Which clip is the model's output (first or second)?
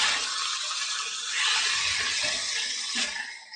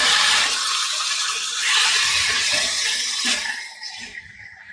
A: second